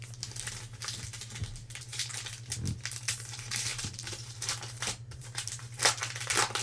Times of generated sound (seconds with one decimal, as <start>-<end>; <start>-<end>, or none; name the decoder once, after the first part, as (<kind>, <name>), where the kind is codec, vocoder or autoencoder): 1.4-2.1 (vocoder, BigVGAN v2); 3.7-6.0